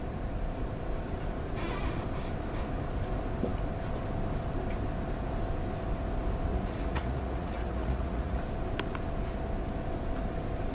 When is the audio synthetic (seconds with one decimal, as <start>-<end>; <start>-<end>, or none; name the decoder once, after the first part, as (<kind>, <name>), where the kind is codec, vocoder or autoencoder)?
6.5-8.4 (vocoder, Vocos)